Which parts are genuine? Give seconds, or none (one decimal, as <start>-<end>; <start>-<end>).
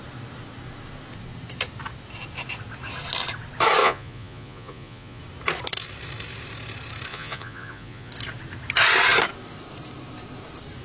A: 0.0-3.8; 5.2-7.1; 8.1-10.8